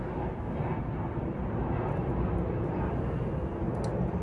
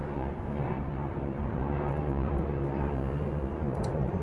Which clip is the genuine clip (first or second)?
first